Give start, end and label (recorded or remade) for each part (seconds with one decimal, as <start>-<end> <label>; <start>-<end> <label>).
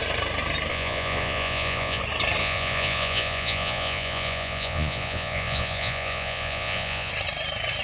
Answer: 0.0-0.7 recorded; 0.7-2.0 remade; 2.0-2.4 recorded; 2.4-7.1 remade; 7.1-7.8 recorded